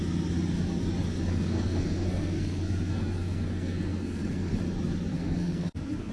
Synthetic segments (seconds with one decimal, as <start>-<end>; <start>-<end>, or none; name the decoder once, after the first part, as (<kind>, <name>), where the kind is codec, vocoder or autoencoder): 1.3-4.6 (codec, SNAC); 5.1-6.1

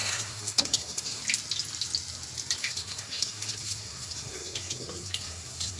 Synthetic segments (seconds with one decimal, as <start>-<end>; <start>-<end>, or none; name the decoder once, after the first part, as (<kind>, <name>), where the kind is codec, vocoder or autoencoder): 0.0-1.2 (codec, SNAC); 2.6-5.8

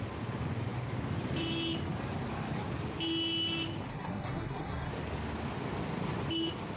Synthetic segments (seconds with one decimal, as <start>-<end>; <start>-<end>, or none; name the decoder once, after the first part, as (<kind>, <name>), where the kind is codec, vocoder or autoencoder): 3.9-4.9 (codec, SNAC)

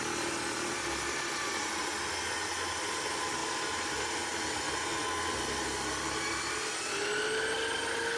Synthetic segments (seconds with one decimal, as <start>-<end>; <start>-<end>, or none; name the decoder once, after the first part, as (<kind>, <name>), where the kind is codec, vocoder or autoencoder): none

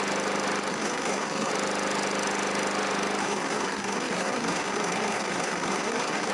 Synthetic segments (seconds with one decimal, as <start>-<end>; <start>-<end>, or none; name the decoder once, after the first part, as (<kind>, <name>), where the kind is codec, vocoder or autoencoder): 0.7-1.5 (codec, SNAC); 3.2-6.3

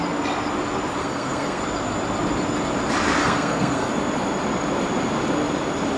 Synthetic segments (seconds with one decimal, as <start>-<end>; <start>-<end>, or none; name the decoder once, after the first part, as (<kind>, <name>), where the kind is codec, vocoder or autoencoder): 1.0-1.6 (codec, SNAC); 3.2-3.9

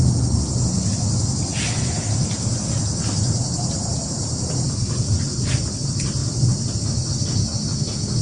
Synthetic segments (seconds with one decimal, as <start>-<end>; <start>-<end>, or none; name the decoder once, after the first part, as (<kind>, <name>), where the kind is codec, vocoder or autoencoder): none

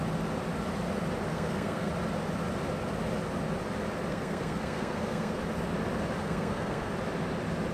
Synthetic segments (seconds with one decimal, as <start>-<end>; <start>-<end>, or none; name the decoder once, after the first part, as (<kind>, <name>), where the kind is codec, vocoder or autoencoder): 1.3-1.9 (codec, SNAC); 4.1-5.4; 6.2-6.9